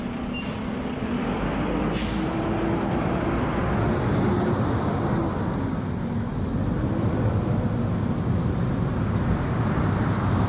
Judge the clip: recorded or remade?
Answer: recorded